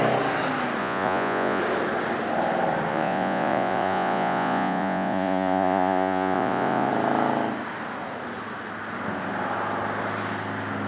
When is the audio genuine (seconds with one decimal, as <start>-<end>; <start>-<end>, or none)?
0.0-0.8; 1.6-2.9; 6.9-10.9